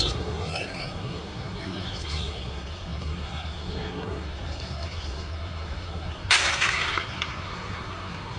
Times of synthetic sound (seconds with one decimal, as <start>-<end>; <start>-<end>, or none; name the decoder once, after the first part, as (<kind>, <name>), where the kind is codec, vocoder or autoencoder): 0.0-8.4 (codec, SNAC)